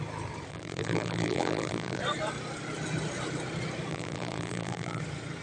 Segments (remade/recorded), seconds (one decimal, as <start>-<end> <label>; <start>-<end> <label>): 0.0-0.5 recorded; 0.5-2.0 remade; 2.0-3.9 recorded; 3.9-5.0 remade; 5.0-5.4 recorded